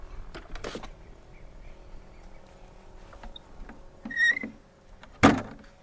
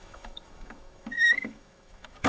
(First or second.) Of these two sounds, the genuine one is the first